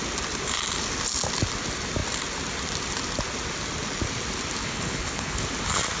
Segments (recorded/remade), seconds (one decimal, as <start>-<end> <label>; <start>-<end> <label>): 0.0-4.6 recorded; 4.6-5.4 remade; 5.4-6.0 recorded